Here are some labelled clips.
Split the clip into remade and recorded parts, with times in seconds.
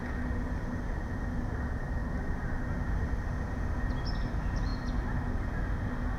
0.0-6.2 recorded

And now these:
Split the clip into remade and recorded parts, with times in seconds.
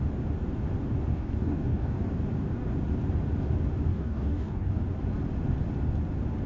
0.0-1.1 recorded; 1.1-2.0 remade; 2.0-3.9 recorded; 3.9-4.7 remade; 4.7-6.5 recorded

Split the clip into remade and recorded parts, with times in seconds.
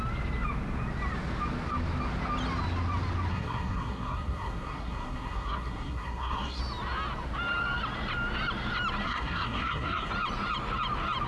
0.0-3.3 recorded; 3.3-6.6 remade; 6.6-9.0 recorded; 9.0-10.1 remade; 10.1-11.3 recorded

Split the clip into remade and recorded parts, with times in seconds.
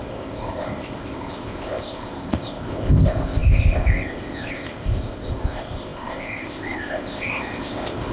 0.0-8.1 remade